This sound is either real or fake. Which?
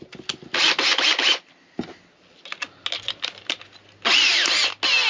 real